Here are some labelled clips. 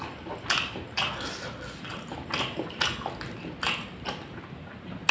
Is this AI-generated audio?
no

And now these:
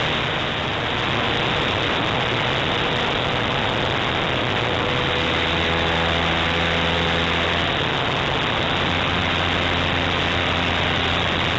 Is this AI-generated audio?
no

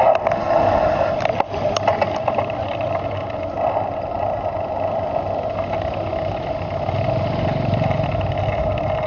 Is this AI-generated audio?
no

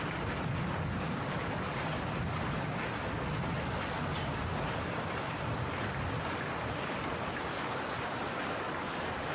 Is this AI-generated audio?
no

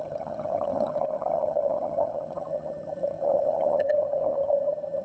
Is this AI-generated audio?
yes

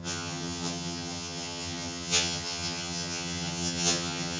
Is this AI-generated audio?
yes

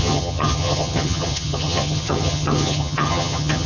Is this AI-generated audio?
yes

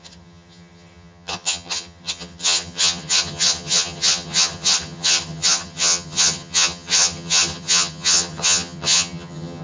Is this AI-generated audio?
yes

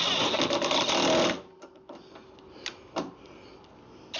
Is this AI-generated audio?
no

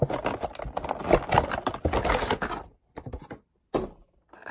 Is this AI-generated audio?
no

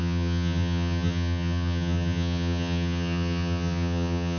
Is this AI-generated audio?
yes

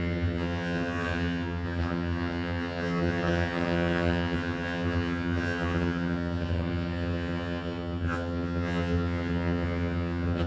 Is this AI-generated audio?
yes